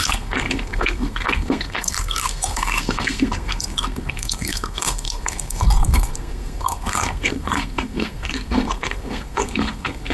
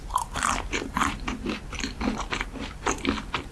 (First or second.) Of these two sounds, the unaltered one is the second